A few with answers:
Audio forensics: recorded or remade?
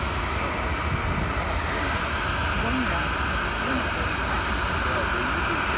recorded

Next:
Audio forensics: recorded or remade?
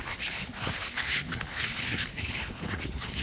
remade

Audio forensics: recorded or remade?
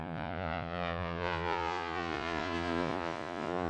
remade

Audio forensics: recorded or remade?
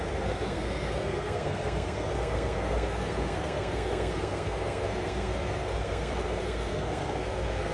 remade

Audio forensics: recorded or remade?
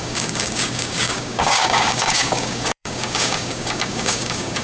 remade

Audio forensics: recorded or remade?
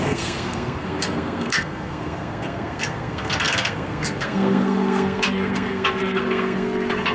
remade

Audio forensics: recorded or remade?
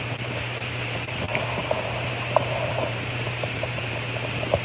remade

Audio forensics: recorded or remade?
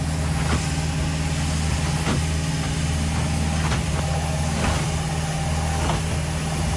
recorded